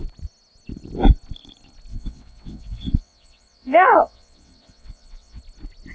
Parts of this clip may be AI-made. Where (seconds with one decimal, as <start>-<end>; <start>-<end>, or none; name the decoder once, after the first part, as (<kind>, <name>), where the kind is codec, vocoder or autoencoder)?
1.9-5.4 (vocoder, WaveNeXt)